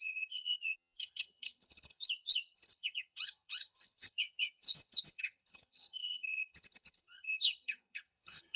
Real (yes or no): no